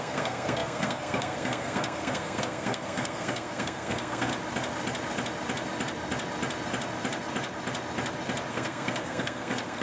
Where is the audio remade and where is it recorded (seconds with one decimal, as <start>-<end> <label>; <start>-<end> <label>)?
0.0-4.3 remade; 4.3-8.5 recorded; 8.5-9.8 remade